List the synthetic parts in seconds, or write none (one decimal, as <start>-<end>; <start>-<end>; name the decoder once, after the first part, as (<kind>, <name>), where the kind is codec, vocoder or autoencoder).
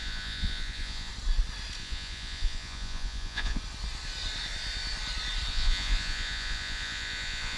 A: 0.0-1.1 (vocoder, Vocos); 1.8-3.6; 5.5-7.6